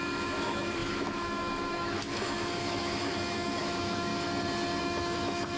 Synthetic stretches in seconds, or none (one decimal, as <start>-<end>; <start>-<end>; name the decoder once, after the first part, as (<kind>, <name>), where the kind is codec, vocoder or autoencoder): 0.0-4.1 (autoencoder, DAC-VAE); 4.8-5.6